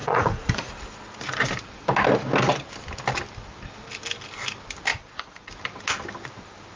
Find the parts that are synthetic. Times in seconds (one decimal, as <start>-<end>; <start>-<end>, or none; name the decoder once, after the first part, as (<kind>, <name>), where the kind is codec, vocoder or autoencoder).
0.0-0.7 (vocoder, Vocos); 4.9-5.5